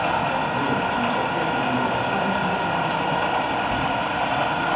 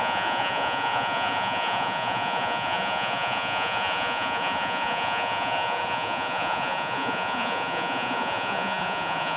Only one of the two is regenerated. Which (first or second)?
second